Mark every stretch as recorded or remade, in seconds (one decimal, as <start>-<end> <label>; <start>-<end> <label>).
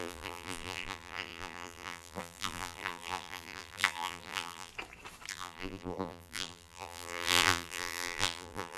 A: 0.0-4.7 remade; 4.7-5.3 recorded; 5.3-8.8 remade